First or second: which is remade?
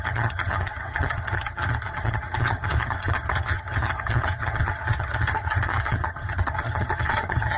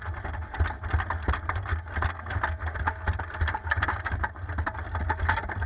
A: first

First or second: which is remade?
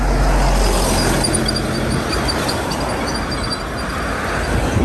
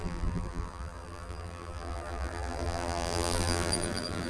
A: second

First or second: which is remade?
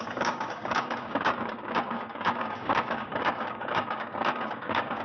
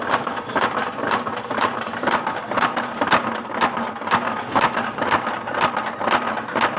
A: first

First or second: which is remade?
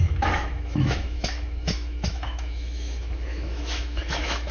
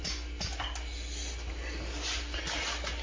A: first